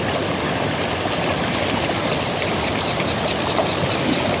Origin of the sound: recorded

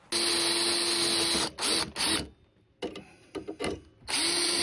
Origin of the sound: recorded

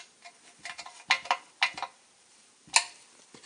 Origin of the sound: recorded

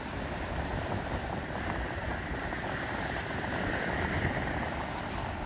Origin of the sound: remade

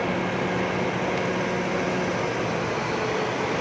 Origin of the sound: recorded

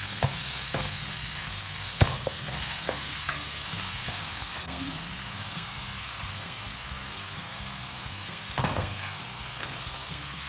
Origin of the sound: remade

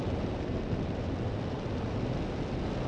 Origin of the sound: recorded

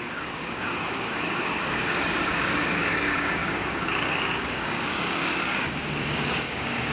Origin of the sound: remade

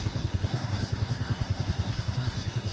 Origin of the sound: remade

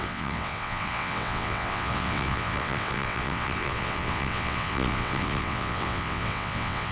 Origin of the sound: remade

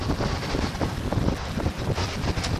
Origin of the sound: recorded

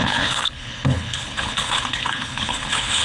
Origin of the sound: remade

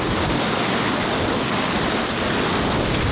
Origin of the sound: recorded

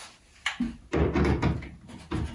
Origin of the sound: recorded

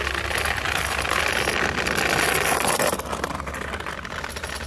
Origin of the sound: recorded